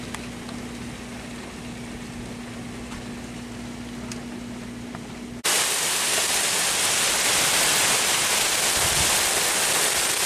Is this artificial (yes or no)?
no